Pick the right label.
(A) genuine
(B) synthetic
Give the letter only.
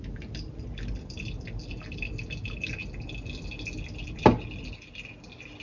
A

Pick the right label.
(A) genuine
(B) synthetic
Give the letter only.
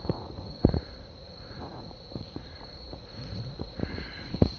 B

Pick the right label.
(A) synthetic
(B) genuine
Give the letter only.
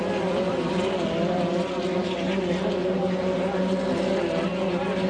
B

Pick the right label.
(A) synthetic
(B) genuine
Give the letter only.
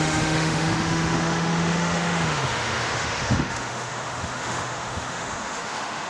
A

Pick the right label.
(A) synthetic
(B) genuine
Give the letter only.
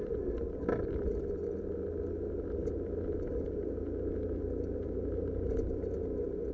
B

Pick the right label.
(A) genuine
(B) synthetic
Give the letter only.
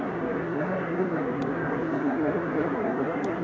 B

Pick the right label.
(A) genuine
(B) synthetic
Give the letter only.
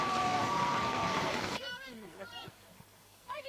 B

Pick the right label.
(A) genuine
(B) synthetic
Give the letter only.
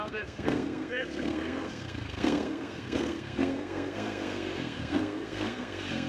B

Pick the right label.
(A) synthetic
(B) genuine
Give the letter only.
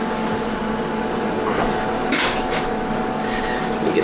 B